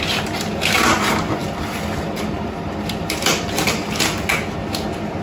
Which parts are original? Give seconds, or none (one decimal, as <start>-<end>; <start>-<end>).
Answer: 0.0-1.4; 4.2-5.2